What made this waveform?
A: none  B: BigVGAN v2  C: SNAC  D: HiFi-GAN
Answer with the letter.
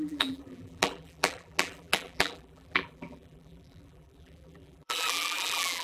B